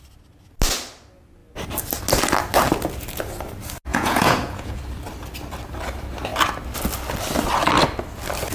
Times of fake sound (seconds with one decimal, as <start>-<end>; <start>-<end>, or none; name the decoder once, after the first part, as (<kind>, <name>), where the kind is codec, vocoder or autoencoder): 3.9-4.8 (vocoder, Vocos)